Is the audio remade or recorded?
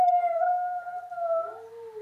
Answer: recorded